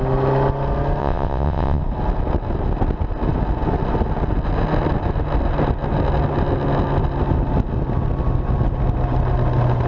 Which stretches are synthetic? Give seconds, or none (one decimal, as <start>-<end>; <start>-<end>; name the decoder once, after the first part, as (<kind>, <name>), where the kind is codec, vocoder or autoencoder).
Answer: 1.0-1.8 (vocoder, WaveNeXt)